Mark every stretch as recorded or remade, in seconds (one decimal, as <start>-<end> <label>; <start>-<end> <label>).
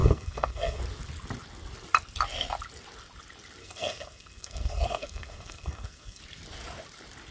0.0-0.8 remade; 0.8-3.6 recorded; 3.6-6.2 remade; 6.2-7.3 recorded